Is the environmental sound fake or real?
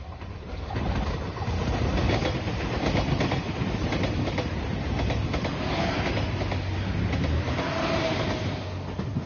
real